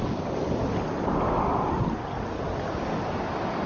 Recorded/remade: recorded